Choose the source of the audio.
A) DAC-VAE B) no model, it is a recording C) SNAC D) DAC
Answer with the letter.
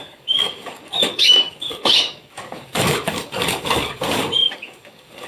D